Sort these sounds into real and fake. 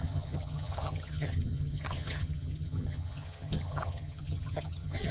fake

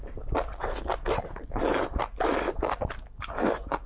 real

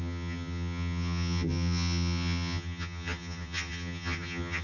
fake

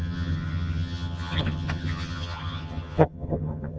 fake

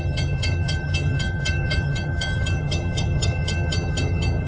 fake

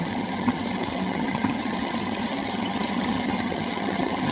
fake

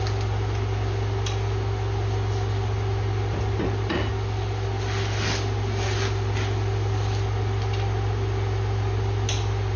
real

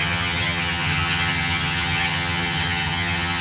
fake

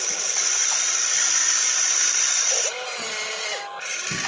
real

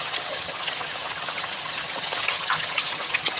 fake